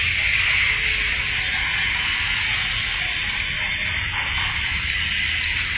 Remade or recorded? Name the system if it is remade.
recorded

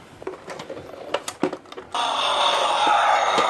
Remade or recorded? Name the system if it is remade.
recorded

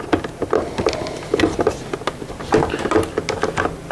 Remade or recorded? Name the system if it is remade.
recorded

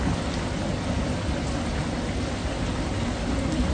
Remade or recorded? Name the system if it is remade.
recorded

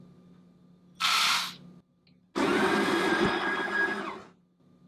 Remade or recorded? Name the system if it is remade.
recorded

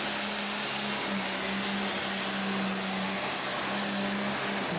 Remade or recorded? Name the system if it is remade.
recorded